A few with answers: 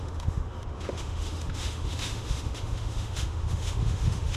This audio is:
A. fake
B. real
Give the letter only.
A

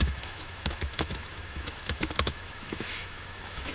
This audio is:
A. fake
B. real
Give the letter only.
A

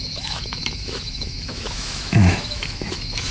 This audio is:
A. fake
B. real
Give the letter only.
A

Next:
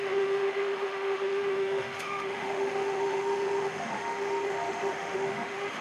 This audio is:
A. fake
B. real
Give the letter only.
A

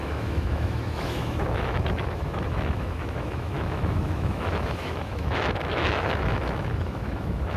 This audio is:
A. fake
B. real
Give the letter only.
A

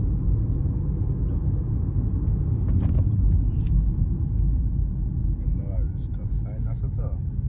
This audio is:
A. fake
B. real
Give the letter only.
B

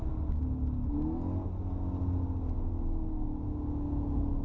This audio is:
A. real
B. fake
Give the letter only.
A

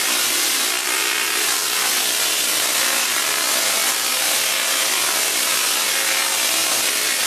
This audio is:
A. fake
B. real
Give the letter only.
B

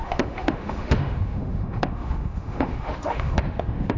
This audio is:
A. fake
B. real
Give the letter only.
A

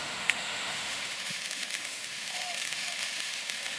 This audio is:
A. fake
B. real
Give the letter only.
A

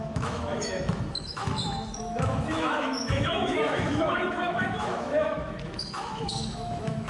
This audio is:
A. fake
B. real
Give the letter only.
A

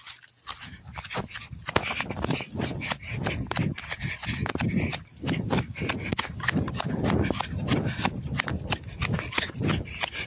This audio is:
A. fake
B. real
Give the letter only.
B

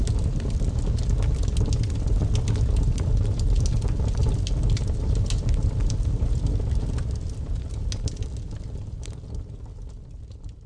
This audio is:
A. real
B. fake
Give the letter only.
A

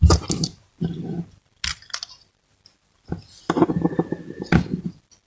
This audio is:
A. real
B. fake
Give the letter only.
A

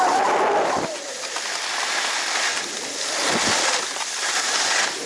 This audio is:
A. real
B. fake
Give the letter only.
A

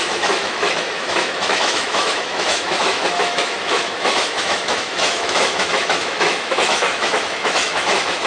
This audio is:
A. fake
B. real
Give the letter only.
A